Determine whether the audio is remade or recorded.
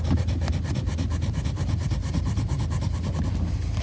recorded